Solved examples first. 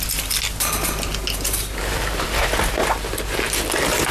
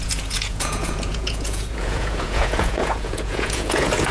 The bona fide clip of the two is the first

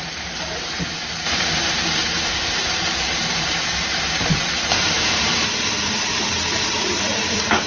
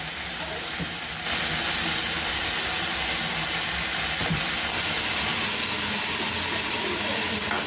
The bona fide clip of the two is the second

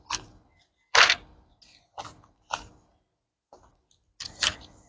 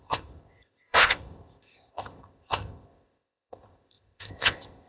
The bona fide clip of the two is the first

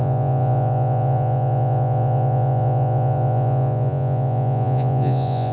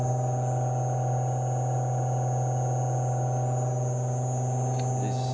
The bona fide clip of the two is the second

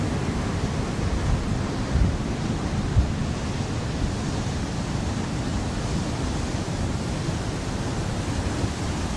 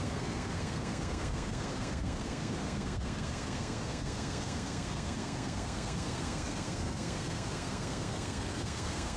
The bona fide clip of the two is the first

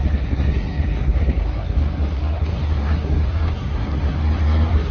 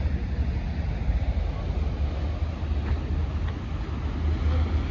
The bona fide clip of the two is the second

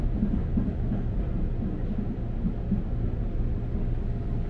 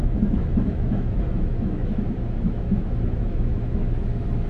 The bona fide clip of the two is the first